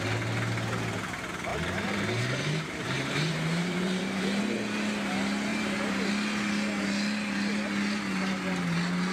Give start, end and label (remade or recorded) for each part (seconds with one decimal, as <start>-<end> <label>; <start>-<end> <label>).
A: 0.0-1.5 recorded; 1.5-4.4 remade; 4.4-5.5 recorded; 5.5-6.1 remade; 6.1-9.1 recorded